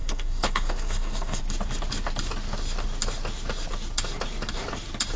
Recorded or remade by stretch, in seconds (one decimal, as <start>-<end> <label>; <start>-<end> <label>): 0.0-1.4 remade; 1.4-5.2 recorded